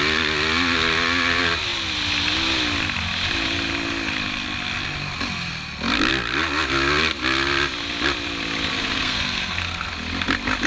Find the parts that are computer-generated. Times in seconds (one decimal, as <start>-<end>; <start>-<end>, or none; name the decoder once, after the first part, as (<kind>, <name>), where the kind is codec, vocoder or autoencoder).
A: 8.7-9.9 (codec, SNAC)